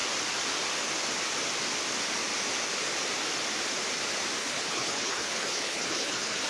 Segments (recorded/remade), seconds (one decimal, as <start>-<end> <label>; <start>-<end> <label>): 0.0-4.4 recorded; 4.4-6.5 remade